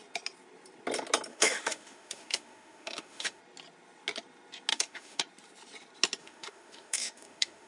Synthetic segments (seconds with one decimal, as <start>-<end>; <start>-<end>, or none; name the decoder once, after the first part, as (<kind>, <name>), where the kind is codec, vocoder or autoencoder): 1.3-3.4 (autoencoder, DAC-VAE); 4.7-5.2; 6.2-7.7